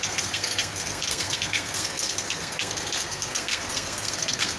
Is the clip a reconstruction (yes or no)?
yes